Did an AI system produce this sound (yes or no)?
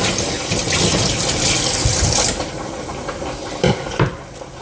yes